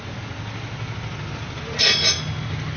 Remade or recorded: recorded